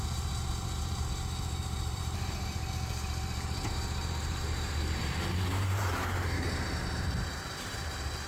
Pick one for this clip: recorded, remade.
remade